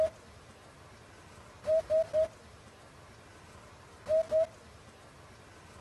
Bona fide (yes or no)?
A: yes